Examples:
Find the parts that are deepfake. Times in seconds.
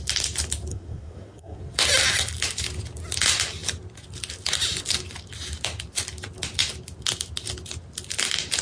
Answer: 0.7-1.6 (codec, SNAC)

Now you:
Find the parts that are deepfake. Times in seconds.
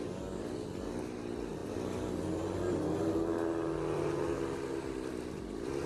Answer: none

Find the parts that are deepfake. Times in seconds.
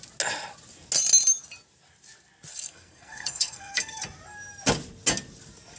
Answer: 2.5-3.9 (codec, SNAC)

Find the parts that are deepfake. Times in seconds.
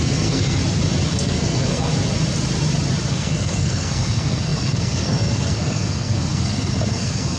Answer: 0.0-0.6 (codec, SNAC); 1.1-1.9; 3.1-7.4